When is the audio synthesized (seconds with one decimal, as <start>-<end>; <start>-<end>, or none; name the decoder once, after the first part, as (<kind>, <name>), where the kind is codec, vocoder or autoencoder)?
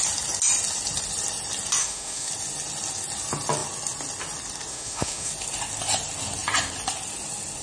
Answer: 1.8-2.3 (autoencoder, DAC-VAE); 4.7-5.3